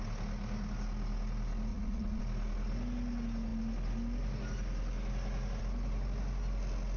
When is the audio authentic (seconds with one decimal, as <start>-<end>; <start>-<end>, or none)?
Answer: 0.0-1.7; 2.2-7.0